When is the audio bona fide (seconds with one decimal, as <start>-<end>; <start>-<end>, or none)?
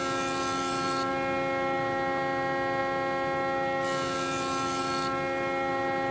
0.0-6.1